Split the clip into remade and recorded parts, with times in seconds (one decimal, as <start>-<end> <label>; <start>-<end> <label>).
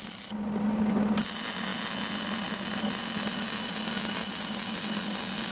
0.0-5.5 recorded